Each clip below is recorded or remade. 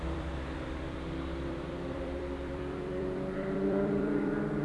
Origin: remade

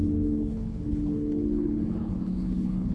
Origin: remade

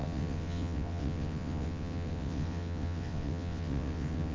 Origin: remade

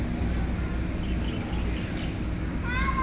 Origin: recorded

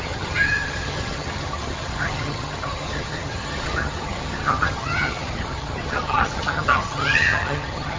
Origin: remade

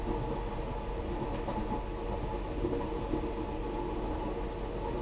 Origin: recorded